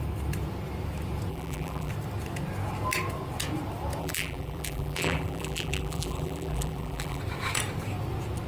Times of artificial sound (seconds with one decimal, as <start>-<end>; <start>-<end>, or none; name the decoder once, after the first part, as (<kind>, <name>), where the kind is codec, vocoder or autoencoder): 1.3-1.9 (vocoder, BigVGAN v2); 4.0-7.2